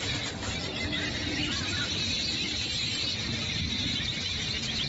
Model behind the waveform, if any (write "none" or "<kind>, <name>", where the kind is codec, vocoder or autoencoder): none